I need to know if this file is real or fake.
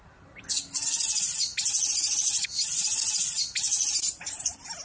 real